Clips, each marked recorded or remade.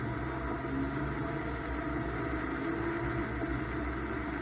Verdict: recorded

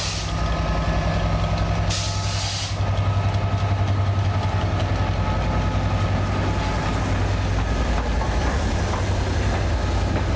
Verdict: recorded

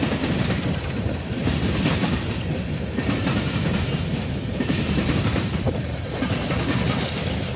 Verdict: remade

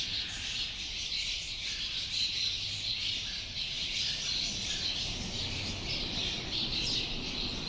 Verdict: recorded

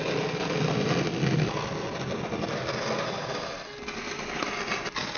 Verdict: recorded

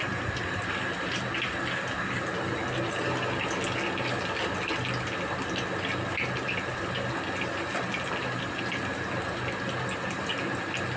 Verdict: recorded